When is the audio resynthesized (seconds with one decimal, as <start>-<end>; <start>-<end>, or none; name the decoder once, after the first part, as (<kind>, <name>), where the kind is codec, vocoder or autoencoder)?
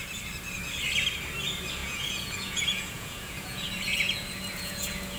1.8-5.2 (vocoder, Vocos)